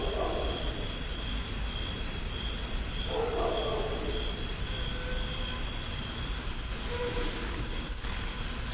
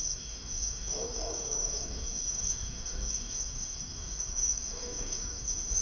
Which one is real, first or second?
first